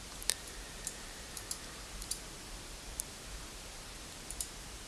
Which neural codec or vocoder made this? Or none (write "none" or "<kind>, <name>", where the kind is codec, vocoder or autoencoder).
vocoder, BigVGAN v2